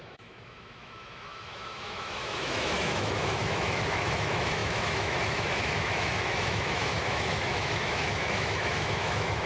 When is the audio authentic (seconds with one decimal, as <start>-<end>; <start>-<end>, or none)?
none